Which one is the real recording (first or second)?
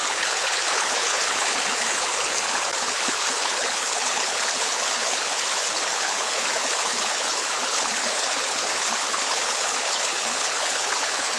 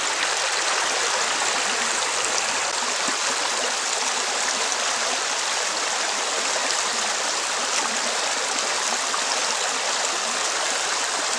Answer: second